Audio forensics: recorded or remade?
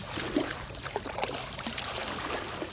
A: recorded